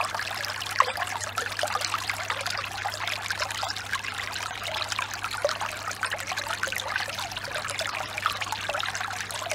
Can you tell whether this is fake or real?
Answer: real